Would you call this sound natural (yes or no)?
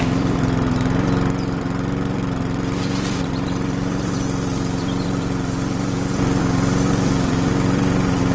no